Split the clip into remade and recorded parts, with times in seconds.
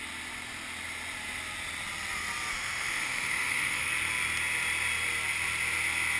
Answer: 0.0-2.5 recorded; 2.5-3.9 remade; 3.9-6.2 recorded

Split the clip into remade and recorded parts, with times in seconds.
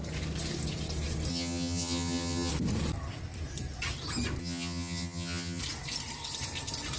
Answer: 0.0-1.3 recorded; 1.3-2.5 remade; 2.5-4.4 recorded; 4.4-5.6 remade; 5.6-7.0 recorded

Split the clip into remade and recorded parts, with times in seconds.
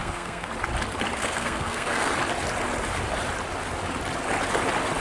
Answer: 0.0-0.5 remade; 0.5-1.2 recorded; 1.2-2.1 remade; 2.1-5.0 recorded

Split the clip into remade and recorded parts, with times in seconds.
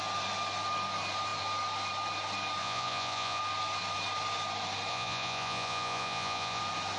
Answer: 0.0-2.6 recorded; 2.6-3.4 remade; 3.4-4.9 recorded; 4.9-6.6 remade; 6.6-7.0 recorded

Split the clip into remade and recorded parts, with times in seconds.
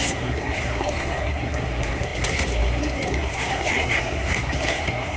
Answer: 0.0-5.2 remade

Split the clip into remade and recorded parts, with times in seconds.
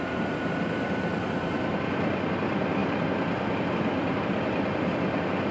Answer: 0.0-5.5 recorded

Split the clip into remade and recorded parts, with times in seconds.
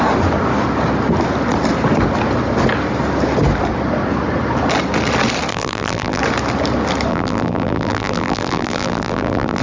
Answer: 0.0-5.5 recorded; 5.5-6.2 remade; 6.2-7.1 recorded; 7.1-9.6 remade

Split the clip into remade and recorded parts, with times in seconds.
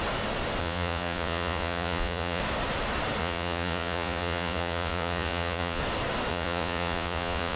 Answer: 0.0-0.6 recorded; 0.6-2.4 remade; 2.4-3.2 recorded; 3.2-5.8 remade; 5.8-6.3 recorded; 6.3-7.6 remade